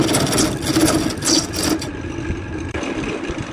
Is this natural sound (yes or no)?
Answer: yes